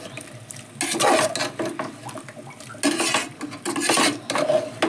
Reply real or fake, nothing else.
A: real